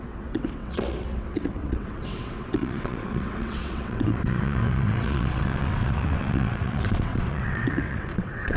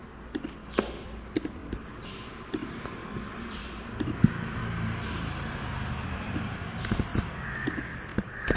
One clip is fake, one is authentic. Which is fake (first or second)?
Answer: first